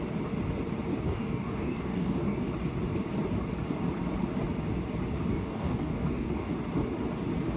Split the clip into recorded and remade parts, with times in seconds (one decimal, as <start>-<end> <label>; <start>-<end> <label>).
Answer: 0.0-0.9 recorded; 0.9-2.4 remade; 2.4-5.3 recorded; 5.3-6.5 remade; 6.5-7.6 recorded